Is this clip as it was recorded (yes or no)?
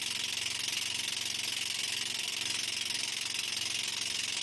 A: yes